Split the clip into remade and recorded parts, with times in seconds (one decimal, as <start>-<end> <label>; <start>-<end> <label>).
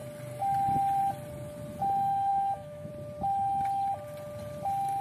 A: 0.0-2.3 recorded; 2.3-2.9 remade; 2.9-5.0 recorded